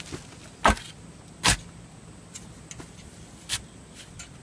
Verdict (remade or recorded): recorded